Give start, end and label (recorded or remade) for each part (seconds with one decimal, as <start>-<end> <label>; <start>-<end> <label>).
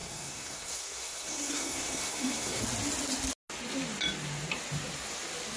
0.0-2.6 remade; 2.6-5.6 recorded